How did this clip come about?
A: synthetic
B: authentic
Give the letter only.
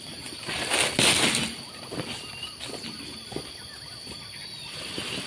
B